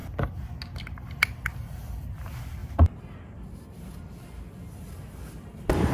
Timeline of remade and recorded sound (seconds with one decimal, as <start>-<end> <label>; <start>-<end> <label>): 0.0-1.6 recorded; 1.6-2.6 remade; 2.6-3.2 recorded; 3.2-5.9 remade